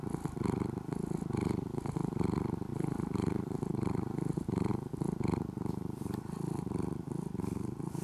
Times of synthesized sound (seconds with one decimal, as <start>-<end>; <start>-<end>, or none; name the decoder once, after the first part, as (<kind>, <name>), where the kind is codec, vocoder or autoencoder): 2.7-4.7 (vocoder, BigVGAN v2)